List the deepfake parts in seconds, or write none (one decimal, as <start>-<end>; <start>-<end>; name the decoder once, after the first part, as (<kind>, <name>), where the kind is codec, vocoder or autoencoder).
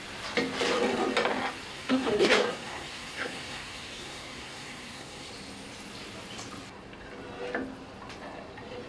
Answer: 1.7-5.3 (codec, SNAC)